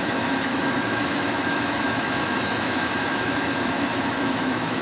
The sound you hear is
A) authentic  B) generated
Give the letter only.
B